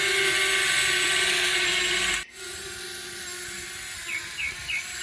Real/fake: real